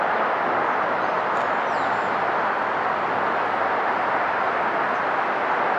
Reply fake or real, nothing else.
real